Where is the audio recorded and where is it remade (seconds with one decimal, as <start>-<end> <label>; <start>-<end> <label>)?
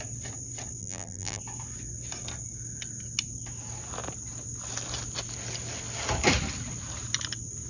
0.0-0.8 recorded; 0.8-1.4 remade; 1.4-7.7 recorded